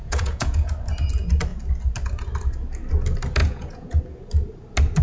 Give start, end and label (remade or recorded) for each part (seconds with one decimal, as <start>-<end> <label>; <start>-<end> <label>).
0.0-0.7 remade; 0.7-3.4 recorded; 3.4-4.0 remade; 4.0-5.0 recorded